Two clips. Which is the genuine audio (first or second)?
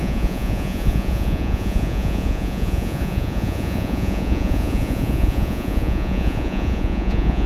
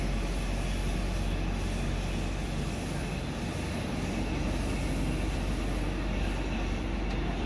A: second